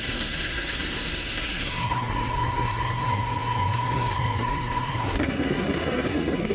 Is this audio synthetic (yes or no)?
yes